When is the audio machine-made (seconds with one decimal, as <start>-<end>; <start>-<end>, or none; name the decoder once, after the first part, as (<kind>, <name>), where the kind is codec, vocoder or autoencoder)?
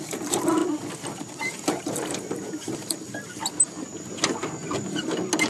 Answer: 0.0-0.6 (vocoder, BigVGAN v2); 1.4-3.4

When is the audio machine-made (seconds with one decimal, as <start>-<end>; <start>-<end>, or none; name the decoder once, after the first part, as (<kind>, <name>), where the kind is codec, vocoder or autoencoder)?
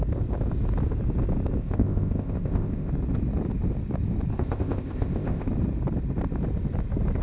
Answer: 1.6-2.9 (codec, ZipCodec); 4.3-5.5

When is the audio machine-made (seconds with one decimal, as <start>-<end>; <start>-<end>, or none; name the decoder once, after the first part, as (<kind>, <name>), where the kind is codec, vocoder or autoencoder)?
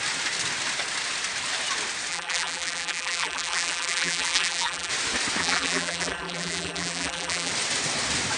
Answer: 2.1-4.9 (vocoder, BigVGAN v2); 5.4-7.5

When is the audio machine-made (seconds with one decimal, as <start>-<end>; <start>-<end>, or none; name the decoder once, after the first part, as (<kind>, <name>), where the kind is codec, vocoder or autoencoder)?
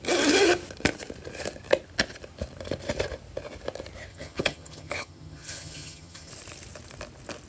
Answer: 4.1-6.3 (vocoder, HiFi-GAN)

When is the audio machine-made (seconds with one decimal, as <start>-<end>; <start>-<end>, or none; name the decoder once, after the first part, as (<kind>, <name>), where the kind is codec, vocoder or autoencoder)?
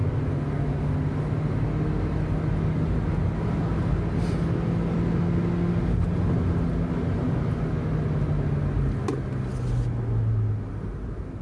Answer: none